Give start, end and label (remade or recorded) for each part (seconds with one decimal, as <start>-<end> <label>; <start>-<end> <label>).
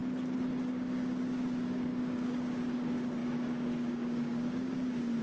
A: 0.0-0.7 recorded; 0.7-5.2 remade